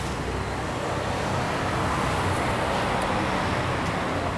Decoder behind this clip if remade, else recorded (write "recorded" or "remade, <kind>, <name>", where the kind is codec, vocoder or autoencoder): recorded